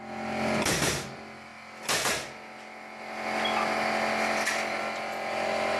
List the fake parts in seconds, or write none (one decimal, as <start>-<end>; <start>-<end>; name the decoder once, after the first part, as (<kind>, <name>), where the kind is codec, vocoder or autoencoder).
none